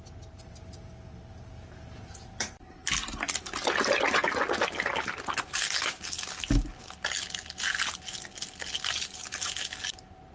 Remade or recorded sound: recorded